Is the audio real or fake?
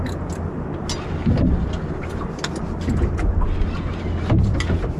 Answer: real